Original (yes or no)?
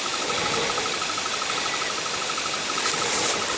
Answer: yes